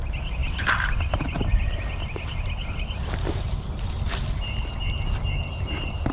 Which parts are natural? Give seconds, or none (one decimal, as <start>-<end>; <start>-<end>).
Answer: 0.0-6.1

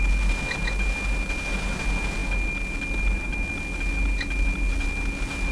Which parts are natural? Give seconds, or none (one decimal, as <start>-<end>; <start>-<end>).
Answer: 0.0-5.5

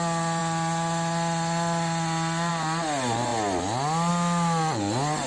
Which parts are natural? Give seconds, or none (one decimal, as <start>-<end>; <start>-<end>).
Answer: 0.0-5.3

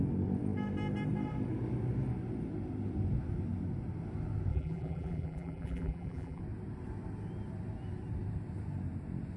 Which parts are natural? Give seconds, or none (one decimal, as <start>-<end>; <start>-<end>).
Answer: 0.0-4.5; 6.4-9.4

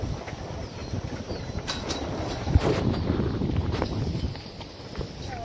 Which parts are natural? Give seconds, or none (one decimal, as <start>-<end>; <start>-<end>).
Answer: 0.0-0.8; 3.8-5.4